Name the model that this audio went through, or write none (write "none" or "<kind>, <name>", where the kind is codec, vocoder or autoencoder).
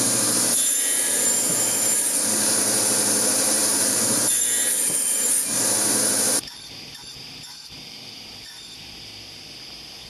vocoder, BigVGAN v2